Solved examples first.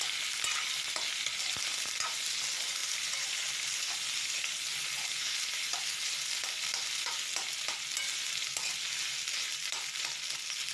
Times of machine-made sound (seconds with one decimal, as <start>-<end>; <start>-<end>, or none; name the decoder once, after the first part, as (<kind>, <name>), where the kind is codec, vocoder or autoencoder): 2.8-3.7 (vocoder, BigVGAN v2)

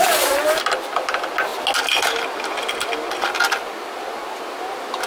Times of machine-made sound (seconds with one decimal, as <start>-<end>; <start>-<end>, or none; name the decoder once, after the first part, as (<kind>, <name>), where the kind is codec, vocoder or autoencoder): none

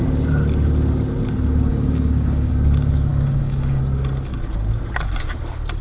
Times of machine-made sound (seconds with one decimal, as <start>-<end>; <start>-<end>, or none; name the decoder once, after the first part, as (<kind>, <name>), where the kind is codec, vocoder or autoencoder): 1.7-2.5 (codec, DAC); 3.1-3.8